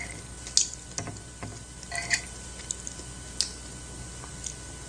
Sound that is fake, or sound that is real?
real